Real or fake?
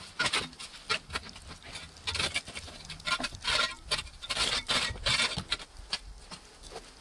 fake